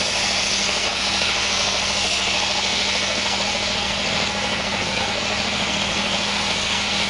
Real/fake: fake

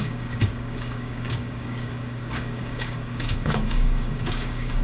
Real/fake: fake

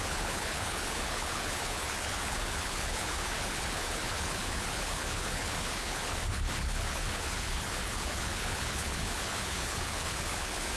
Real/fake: fake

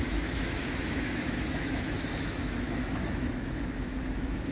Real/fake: fake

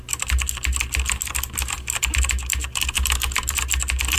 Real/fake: real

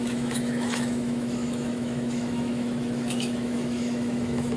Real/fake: fake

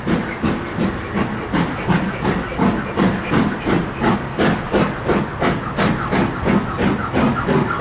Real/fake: real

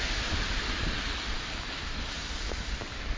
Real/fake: real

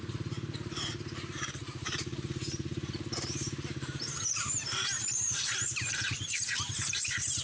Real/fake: fake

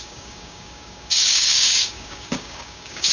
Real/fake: fake